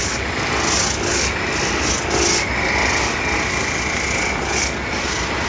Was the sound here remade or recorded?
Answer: recorded